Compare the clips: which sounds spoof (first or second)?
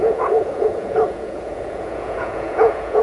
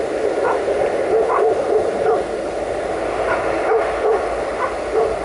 first